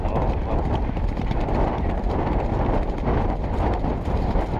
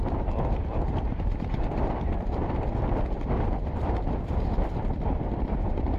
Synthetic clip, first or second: second